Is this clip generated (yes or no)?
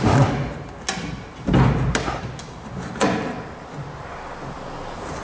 no